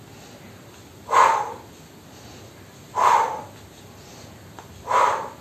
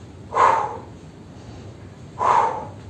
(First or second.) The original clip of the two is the first